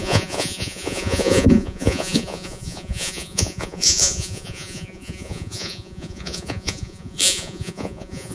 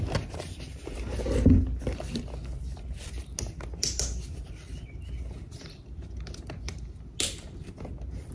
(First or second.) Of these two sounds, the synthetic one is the first